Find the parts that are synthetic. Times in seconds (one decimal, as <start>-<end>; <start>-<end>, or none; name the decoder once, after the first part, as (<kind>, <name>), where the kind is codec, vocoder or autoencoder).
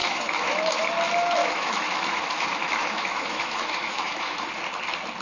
0.0-0.9 (autoencoder, DAC-VAE); 1.4-4.5